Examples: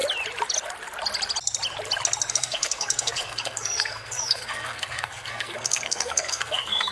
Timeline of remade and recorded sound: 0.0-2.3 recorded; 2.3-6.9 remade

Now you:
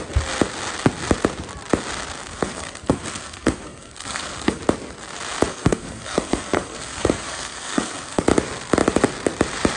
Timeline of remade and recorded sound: 0.0-2.3 recorded; 2.3-4.6 remade; 4.6-5.5 recorded; 5.5-8.2 remade; 8.2-9.8 recorded

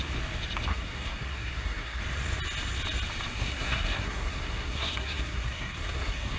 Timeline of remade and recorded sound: 0.0-0.7 recorded; 0.7-2.0 remade; 2.0-3.3 recorded; 3.3-6.4 remade

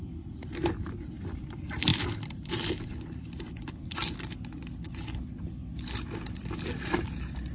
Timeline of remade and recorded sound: 0.0-7.5 recorded

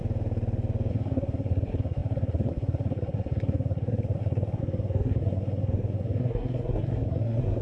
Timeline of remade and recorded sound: 0.0-0.9 recorded; 0.9-7.6 remade

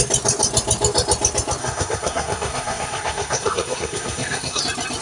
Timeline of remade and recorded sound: 0.0-1.6 recorded; 1.6-4.6 remade; 4.6-5.0 recorded

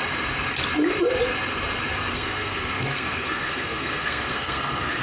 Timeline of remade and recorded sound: 0.0-2.1 recorded; 2.1-5.0 remade